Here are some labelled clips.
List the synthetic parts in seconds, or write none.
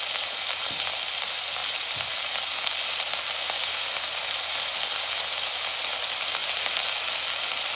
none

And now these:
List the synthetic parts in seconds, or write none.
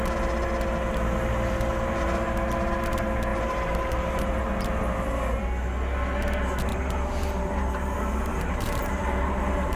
3.3-4.4 (vocoder, BigVGAN v2); 6.7-9.8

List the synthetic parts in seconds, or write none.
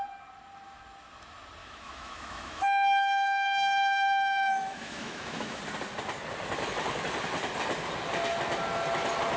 1.6-5.6 (autoencoder, DAC-VAE)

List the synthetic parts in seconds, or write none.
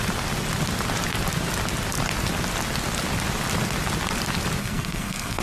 4.6-5.4 (codec, SNAC)